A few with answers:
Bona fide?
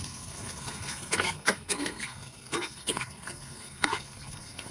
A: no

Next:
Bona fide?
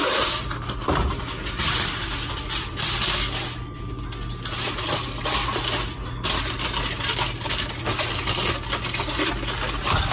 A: yes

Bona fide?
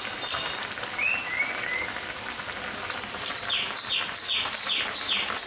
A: yes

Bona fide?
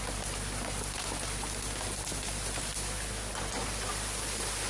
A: yes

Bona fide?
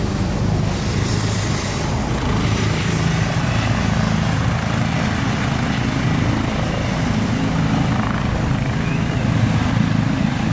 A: yes